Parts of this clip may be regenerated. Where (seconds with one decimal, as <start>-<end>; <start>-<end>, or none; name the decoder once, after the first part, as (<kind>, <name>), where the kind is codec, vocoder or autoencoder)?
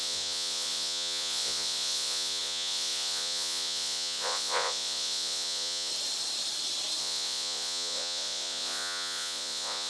0.0-5.9 (vocoder, Vocos); 7.0-9.9